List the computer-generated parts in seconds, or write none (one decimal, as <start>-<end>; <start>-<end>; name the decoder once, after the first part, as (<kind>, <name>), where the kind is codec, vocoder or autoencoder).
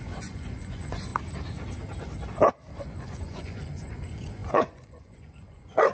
0.0-1.1 (vocoder, Vocos); 2.8-5.9